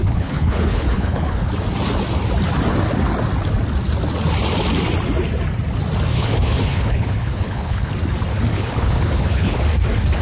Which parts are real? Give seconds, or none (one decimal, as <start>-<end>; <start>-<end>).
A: 1.5-6.1; 7.9-8.5; 9.6-10.2